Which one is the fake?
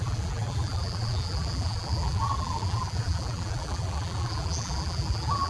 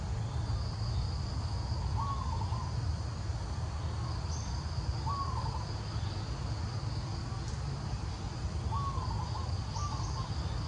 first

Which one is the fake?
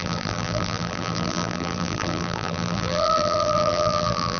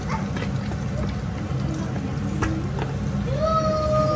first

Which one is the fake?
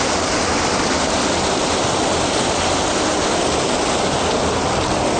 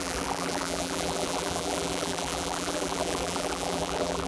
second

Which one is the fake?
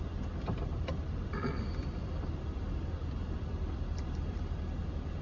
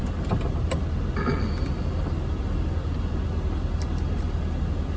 first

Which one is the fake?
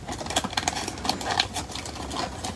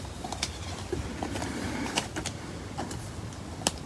second